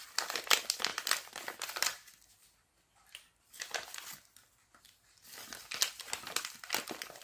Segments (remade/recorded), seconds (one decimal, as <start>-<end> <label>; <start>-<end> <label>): 0.0-7.2 recorded